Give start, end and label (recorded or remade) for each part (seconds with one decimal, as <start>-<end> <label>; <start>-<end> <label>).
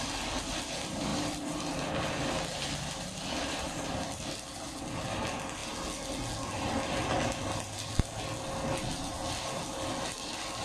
0.0-5.6 remade; 5.6-10.0 recorded; 10.0-10.6 remade